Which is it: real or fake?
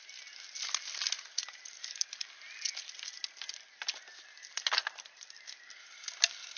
real